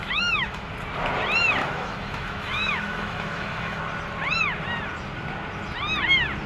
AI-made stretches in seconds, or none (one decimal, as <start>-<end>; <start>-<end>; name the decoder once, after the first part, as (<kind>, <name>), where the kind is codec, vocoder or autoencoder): 0.0-0.7 (autoencoder, DAC-VAE); 1.6-3.8

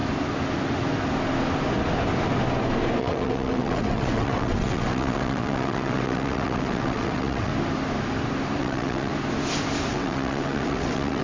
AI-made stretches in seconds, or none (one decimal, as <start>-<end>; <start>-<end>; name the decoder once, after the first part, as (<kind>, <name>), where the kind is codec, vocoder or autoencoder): 3.0-7.5 (vocoder, WaveNeXt); 8.6-9.1; 9.9-11.2